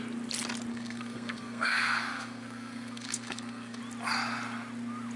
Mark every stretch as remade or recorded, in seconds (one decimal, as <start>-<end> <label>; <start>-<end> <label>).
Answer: 0.0-0.7 recorded; 0.7-3.8 remade; 3.8-5.2 recorded